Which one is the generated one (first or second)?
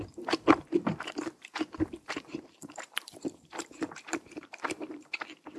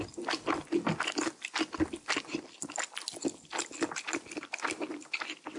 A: first